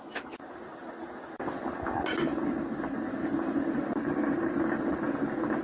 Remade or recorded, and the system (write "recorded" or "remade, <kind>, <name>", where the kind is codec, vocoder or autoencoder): recorded